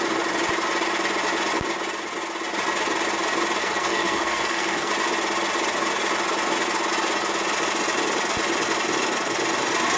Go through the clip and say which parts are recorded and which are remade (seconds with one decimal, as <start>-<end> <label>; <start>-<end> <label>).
0.0-3.6 recorded; 3.6-4.9 remade; 4.9-10.0 recorded